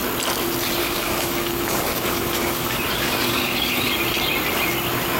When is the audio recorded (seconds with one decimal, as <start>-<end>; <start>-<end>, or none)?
0.0-0.8; 3.9-5.2

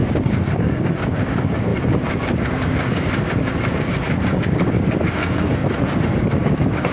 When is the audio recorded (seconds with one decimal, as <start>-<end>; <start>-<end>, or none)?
5.6-6.2

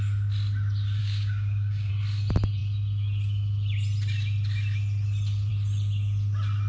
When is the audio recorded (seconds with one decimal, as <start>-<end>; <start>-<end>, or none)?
0.0-1.0; 1.9-6.7

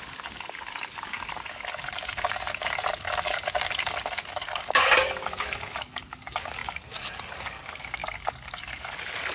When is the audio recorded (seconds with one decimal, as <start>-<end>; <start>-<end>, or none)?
none

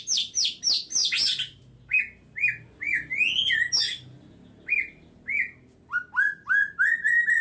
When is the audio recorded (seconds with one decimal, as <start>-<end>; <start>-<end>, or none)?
0.0-7.4

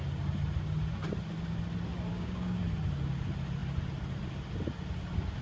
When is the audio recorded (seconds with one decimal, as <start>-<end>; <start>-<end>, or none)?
0.0-2.1; 2.6-5.4

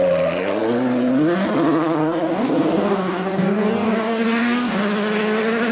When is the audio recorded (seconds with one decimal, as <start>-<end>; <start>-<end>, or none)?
0.0-2.0; 4.8-5.7

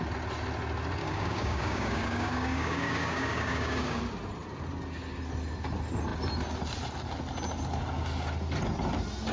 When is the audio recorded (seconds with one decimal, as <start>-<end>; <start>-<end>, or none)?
0.0-1.0; 4.0-9.3